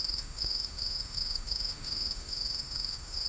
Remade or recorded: remade